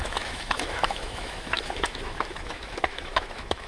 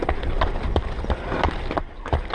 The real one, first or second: second